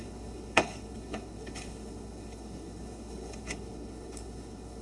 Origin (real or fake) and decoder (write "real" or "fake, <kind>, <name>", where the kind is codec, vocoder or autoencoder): fake, codec, HILCodec